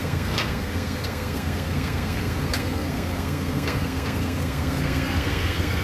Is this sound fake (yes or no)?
yes